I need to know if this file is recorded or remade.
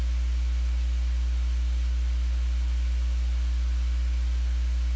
recorded